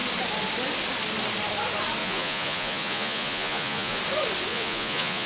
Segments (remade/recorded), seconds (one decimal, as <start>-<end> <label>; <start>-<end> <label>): 0.0-2.0 recorded; 2.0-4.0 remade; 4.0-4.5 recorded; 4.5-5.3 remade